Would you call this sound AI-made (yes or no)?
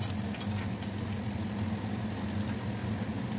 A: no